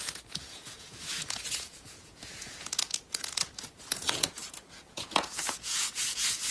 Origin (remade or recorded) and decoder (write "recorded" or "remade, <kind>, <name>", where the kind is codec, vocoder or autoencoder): remade, vocoder, Vocos